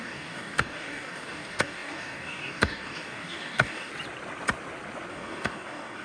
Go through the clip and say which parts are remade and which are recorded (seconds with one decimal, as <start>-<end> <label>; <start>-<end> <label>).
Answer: 0.0-3.9 remade; 3.9-5.1 recorded; 5.1-6.0 remade